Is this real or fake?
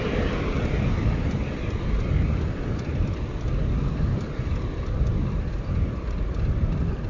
real